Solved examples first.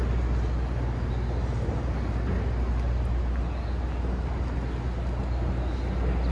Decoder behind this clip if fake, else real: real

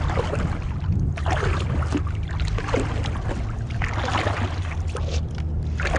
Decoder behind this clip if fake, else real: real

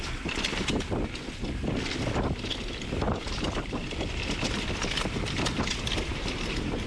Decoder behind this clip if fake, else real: real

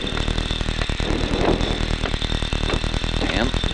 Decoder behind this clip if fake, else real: real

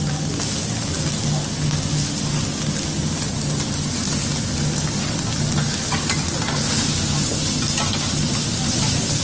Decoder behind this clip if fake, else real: real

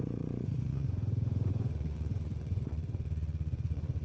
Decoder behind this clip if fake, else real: fake, vocoder, Vocos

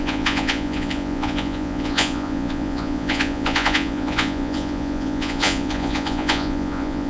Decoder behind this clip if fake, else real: fake, vocoder, Vocos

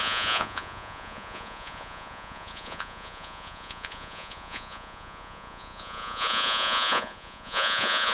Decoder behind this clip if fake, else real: fake, vocoder, Vocos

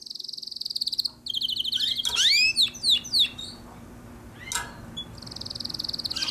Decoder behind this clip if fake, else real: real